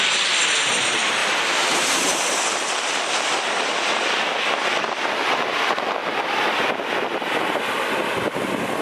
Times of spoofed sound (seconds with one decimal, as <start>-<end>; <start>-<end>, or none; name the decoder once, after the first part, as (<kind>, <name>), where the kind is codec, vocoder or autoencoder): 0.0-8.8 (vocoder, BigVGAN v2)